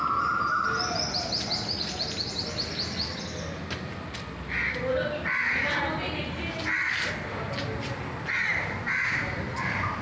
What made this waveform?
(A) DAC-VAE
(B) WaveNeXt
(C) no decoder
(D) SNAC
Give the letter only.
C